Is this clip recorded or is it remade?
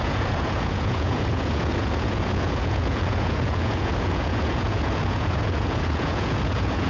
remade